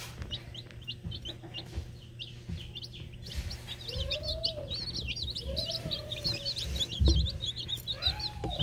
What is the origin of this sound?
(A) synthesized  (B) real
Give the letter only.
B